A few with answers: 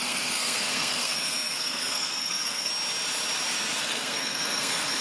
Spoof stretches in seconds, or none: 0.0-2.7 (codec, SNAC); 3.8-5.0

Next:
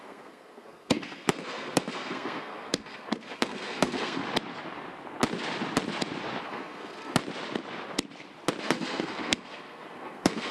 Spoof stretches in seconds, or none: 0.0-4.2 (codec, SNAC); 6.4-7.2; 8.6-10.5

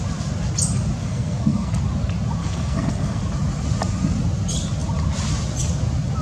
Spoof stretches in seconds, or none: 1.0-1.8 (codec, SNAC); 2.4-3.2